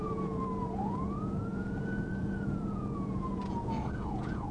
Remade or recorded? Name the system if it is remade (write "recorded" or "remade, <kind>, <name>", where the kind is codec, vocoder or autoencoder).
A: remade, vocoder, Vocos